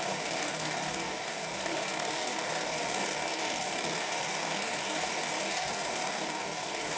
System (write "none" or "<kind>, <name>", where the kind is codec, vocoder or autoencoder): codec, DAC